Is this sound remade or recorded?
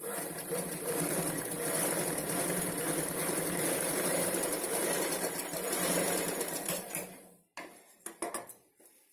remade